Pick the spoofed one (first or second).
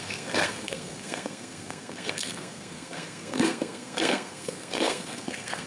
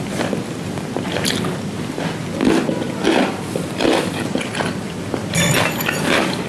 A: first